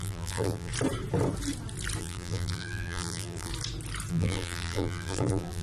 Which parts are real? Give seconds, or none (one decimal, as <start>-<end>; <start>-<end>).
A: 0.7-2.0; 3.5-4.1